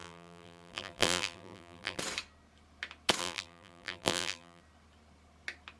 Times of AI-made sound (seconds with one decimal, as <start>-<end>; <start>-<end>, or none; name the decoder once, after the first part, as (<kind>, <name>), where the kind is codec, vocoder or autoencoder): 0.0-2.0 (vocoder, BigVGAN v2); 3.2-4.6